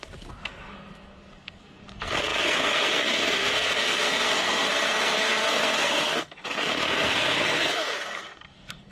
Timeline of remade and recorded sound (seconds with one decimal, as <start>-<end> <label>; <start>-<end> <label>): 0.0-8.9 remade